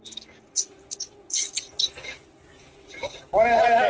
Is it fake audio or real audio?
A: real